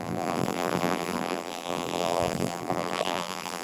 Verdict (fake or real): fake